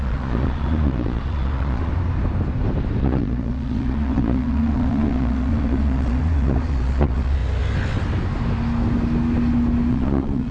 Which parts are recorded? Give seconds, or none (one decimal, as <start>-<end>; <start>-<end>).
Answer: 1.9-3.0; 7.4-9.9